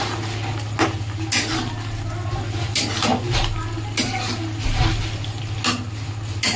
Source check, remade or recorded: recorded